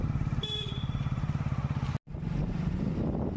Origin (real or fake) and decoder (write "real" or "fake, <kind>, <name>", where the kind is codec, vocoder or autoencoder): real